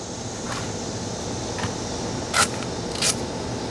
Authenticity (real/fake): real